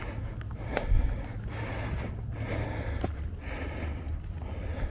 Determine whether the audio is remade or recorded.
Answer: recorded